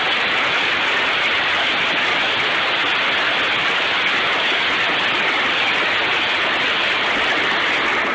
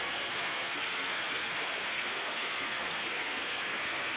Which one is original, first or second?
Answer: first